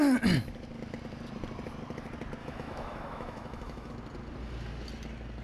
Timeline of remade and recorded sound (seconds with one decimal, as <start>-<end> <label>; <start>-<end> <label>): 0.0-2.4 recorded; 2.4-3.9 remade; 3.9-5.4 recorded